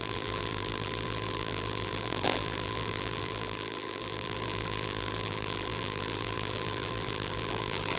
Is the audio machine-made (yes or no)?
yes